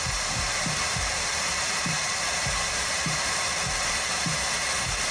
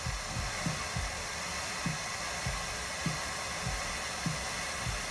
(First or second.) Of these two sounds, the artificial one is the first